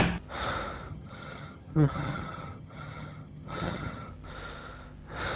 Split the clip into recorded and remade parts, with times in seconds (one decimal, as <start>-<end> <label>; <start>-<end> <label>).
0.0-0.9 recorded; 0.9-4.1 remade; 4.1-5.4 recorded